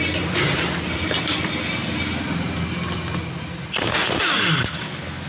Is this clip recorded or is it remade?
recorded